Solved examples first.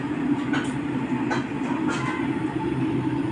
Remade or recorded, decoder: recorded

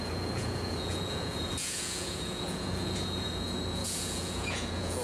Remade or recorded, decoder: remade, vocoder, Vocos